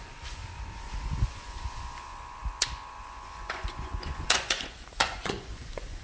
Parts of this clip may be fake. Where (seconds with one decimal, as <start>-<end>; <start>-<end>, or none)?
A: 0.0-0.4; 1.2-6.0